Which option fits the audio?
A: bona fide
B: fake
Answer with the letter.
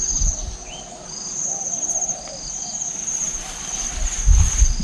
A